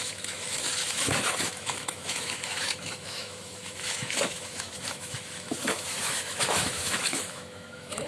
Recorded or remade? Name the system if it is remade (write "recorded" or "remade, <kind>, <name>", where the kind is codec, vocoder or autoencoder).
remade, autoencoder, DAC-VAE